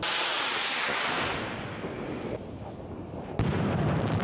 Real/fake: real